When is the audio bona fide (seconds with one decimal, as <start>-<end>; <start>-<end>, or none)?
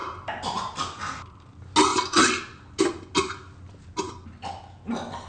0.8-5.3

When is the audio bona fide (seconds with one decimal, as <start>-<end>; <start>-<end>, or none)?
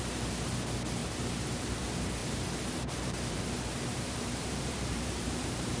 0.0-1.0; 1.8-2.2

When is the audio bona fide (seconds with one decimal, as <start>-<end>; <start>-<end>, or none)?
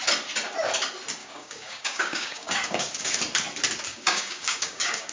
0.0-1.2; 3.2-3.9